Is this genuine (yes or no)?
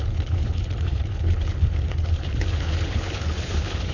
no